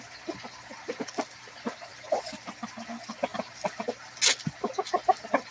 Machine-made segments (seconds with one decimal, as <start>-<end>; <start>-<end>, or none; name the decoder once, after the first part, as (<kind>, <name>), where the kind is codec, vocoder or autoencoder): 1.9-2.5 (vocoder, BigVGAN v2); 3.3-3.8